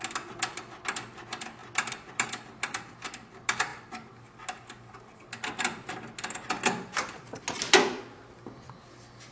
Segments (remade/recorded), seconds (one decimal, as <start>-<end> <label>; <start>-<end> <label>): 0.0-9.3 recorded